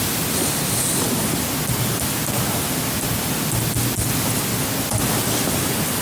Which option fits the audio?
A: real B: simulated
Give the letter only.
A